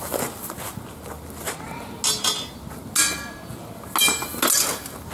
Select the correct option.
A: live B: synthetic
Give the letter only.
A